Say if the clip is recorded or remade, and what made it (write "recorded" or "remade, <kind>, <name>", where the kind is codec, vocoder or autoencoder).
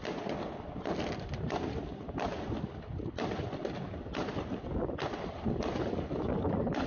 recorded